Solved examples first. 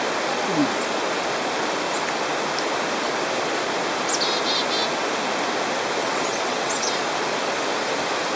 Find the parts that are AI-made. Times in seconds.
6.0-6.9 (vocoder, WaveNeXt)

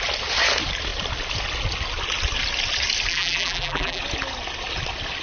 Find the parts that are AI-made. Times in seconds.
3.1-4.0 (vocoder, BigVGAN v2)